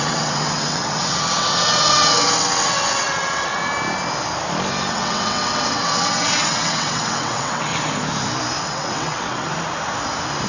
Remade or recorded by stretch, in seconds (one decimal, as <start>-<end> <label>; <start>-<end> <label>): 0.0-3.5 remade; 3.5-4.9 recorded; 4.9-7.7 remade; 7.7-8.6 recorded; 8.6-9.5 remade; 9.5-10.5 recorded